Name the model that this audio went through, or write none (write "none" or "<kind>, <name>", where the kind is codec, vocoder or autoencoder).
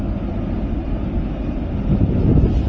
none